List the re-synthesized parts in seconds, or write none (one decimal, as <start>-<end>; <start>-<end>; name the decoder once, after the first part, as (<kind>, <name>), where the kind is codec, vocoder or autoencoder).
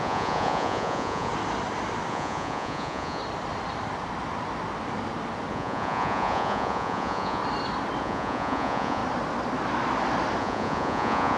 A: 0.0-1.3 (vocoder, Vocos); 2.1-3.2; 5.5-7.4; 8.0-9.0; 10.4-11.4